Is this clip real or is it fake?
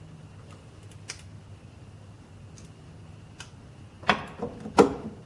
real